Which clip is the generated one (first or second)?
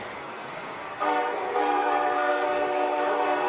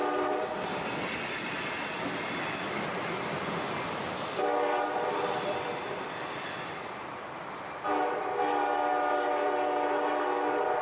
first